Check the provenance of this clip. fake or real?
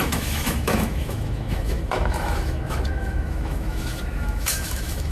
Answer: fake